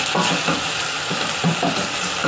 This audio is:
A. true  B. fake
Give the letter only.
A